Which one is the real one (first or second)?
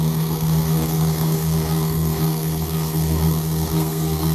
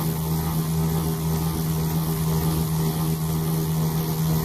second